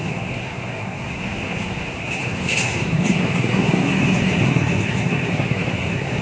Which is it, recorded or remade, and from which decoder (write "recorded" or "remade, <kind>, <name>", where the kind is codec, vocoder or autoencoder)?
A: remade, codec, SNAC